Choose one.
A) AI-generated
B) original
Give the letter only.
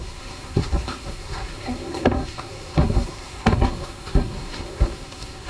A